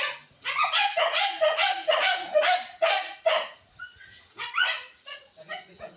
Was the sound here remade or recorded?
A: remade